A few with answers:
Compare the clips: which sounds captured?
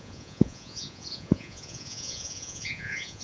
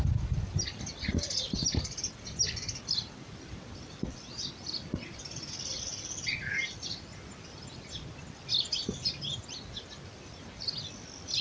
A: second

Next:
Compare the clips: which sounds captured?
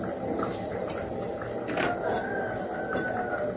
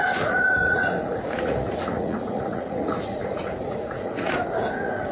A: first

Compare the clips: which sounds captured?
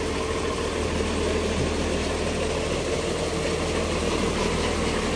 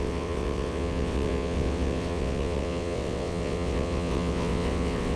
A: first